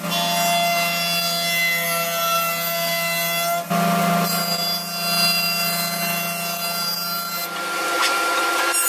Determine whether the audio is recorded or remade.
recorded